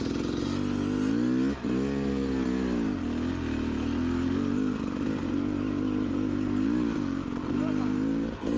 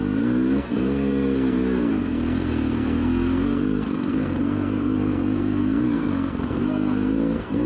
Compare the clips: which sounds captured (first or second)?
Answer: first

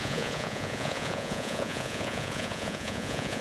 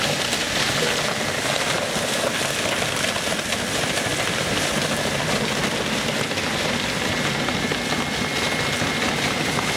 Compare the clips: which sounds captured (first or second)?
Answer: second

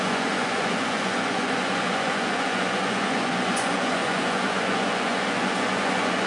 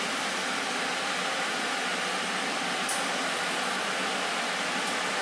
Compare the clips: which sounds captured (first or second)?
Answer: second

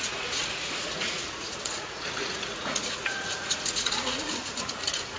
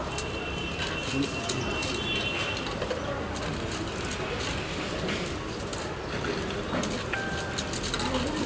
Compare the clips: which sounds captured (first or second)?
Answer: second